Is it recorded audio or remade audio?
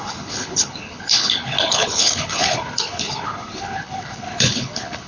remade